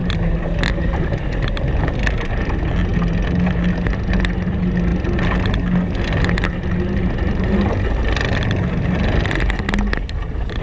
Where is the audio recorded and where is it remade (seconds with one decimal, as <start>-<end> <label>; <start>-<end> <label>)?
0.0-10.6 recorded